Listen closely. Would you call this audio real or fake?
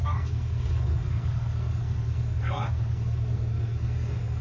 fake